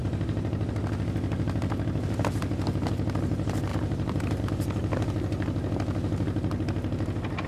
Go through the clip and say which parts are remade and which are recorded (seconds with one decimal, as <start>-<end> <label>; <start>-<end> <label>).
0.0-0.7 remade; 0.7-3.7 recorded; 3.7-4.4 remade; 4.4-7.5 recorded